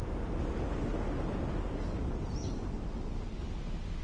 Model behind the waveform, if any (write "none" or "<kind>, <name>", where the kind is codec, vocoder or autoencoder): none